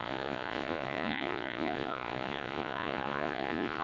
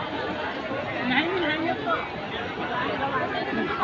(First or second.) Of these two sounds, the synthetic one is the first